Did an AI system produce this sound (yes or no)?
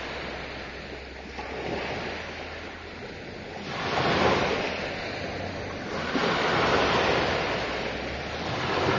no